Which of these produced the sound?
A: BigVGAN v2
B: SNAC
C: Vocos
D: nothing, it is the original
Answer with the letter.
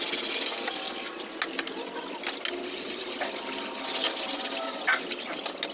D